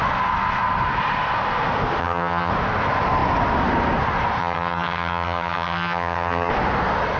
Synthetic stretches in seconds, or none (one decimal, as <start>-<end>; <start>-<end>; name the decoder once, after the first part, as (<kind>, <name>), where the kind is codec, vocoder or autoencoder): 2.0-2.5 (vocoder, HiFi-GAN); 4.4-6.5